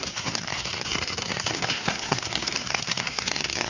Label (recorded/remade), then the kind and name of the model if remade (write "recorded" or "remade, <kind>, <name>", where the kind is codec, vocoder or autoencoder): remade, codec, SNAC